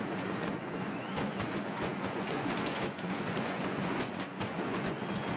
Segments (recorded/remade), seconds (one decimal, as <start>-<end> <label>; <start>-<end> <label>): 0.0-5.4 remade